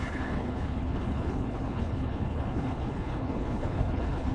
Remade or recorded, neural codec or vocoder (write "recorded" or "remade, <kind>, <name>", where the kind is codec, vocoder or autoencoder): remade, codec, HILCodec